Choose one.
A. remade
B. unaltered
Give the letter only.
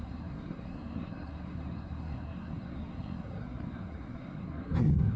A